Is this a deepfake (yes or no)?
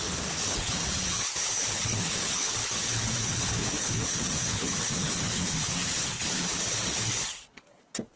yes